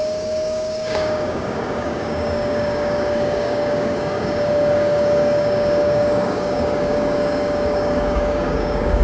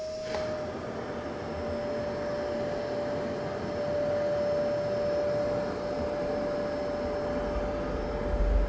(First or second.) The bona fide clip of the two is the second